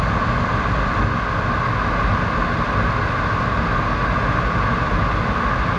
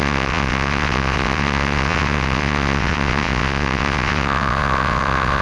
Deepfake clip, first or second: second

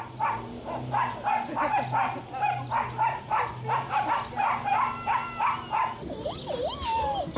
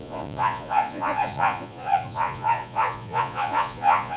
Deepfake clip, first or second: second